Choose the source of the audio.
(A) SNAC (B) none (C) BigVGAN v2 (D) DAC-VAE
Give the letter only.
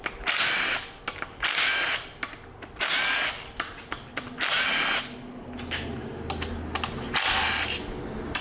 B